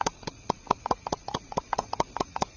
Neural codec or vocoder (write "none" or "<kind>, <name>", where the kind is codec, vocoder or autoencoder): vocoder, Vocos